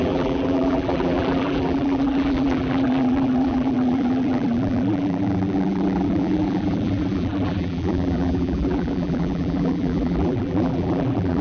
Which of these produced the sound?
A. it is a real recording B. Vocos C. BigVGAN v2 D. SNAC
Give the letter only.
C